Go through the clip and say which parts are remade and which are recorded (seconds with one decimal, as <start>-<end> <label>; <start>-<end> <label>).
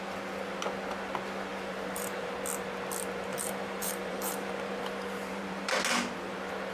0.0-1.5 recorded; 1.5-2.3 remade; 2.3-3.3 recorded; 3.3-5.8 remade; 5.8-6.7 recorded